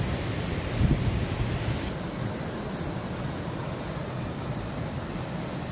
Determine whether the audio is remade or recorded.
recorded